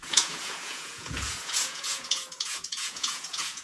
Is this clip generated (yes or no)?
yes